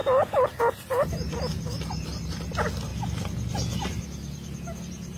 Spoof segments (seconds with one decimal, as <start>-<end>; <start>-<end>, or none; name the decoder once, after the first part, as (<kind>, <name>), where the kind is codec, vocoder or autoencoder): none